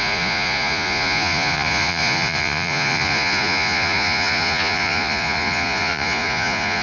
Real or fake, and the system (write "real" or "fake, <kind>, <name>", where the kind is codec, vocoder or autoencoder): fake, vocoder, Vocos